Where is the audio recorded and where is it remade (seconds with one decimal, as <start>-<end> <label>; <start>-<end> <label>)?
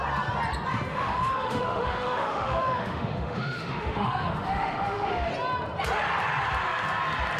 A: 0.0-0.9 recorded; 0.9-5.3 remade; 5.3-7.4 recorded